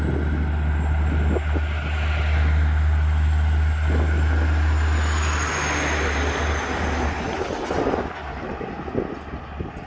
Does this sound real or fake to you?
real